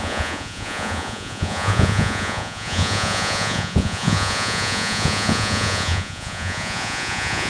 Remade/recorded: remade